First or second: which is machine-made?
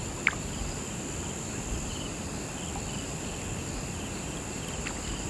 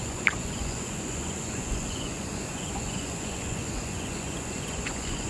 second